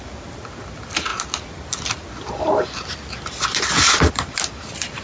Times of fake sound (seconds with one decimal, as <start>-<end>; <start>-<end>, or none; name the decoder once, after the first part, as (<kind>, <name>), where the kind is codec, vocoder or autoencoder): none